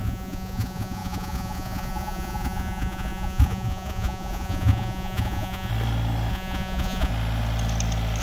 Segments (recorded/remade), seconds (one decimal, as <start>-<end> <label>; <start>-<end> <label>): 0.0-5.7 remade; 5.7-6.3 recorded; 6.3-7.1 remade; 7.1-8.2 recorded